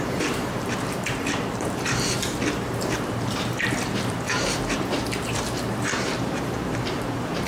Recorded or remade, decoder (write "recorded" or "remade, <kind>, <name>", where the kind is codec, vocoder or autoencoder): remade, vocoder, BigVGAN v2